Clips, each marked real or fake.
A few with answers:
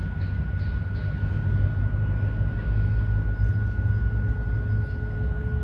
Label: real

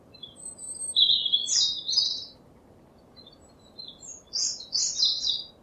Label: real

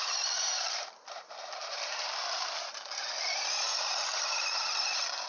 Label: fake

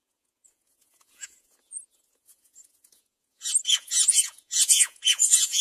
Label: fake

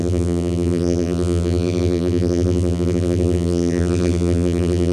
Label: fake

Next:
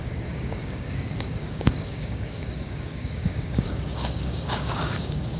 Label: fake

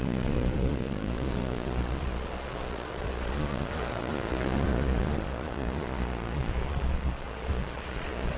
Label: fake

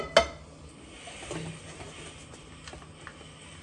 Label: real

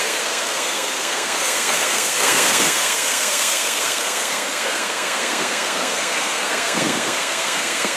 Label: fake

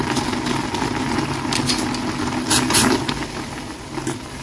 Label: real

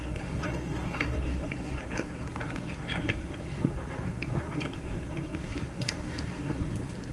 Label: fake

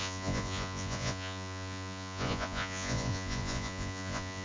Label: fake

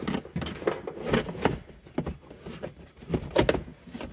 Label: real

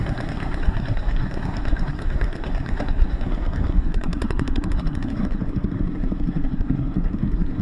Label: fake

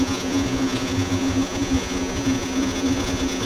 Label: fake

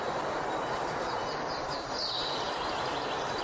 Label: real